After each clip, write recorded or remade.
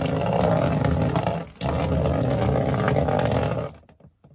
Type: recorded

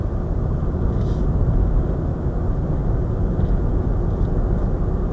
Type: recorded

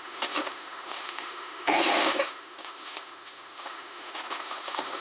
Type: remade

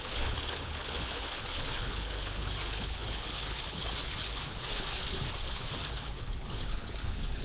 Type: remade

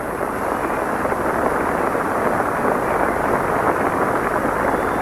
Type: recorded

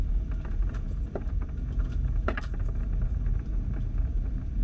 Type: remade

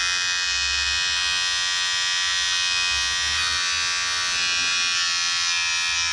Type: recorded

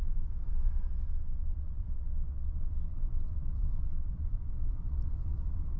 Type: remade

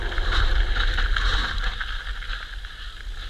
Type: recorded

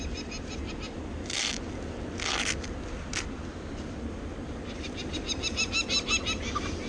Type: recorded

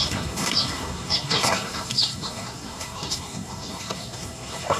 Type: remade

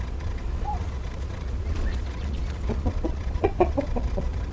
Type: remade